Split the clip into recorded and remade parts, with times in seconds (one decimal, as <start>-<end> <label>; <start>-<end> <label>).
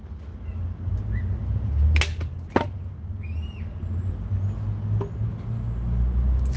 0.0-6.6 recorded